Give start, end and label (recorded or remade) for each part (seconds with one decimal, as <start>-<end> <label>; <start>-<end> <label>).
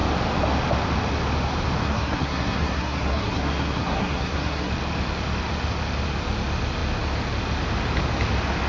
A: 0.0-1.8 recorded; 1.8-4.7 remade; 4.7-8.7 recorded